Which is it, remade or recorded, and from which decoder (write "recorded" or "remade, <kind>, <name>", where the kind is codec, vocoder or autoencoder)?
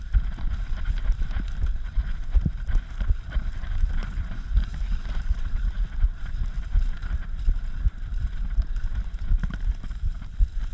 recorded